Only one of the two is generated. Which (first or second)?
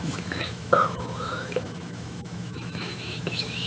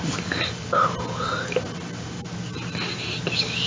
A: first